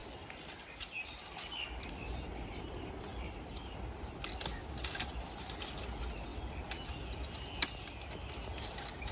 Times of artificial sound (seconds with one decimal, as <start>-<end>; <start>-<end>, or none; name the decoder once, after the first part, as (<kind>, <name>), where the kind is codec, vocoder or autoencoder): none

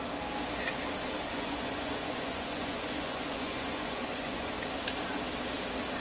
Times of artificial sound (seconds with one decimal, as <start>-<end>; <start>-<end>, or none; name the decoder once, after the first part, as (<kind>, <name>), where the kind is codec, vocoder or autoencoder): 1.3-4.5 (vocoder, Vocos)

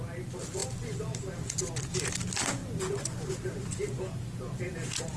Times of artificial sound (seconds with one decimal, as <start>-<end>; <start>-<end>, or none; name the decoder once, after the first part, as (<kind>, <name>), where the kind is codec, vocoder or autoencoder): 2.6-3.4 (vocoder, Vocos)

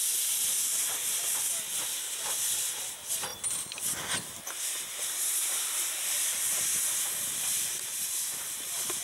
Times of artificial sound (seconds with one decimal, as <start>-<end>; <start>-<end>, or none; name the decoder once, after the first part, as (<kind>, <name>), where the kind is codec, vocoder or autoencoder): none

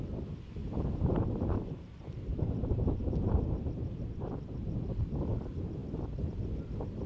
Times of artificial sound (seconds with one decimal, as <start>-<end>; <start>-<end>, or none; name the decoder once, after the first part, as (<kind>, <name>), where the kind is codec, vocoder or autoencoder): 0.6-4.9 (vocoder, BigVGAN v2)